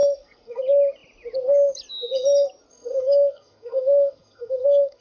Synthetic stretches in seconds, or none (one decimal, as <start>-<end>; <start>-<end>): 0.0-0.6; 2.7-5.0